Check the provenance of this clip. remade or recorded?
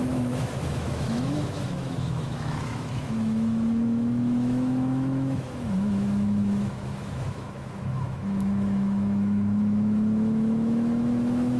remade